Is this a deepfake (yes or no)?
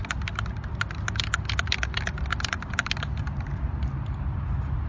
no